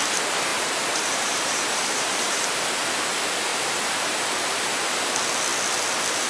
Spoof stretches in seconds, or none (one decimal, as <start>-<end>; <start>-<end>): 0.5-2.9; 3.5-4.2